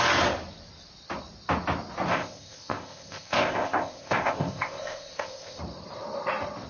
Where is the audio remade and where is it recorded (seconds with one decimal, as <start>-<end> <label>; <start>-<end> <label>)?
0.0-2.1 recorded; 2.1-5.6 remade; 5.6-6.7 recorded